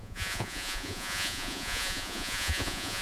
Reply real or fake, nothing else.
fake